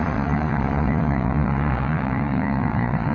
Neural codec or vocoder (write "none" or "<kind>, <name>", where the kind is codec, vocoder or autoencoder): vocoder, Vocos